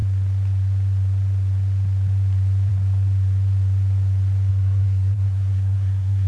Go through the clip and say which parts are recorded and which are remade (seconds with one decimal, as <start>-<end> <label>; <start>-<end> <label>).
0.0-4.5 recorded; 4.5-6.3 remade